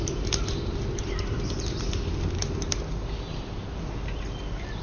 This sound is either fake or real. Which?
real